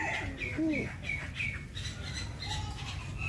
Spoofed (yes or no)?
no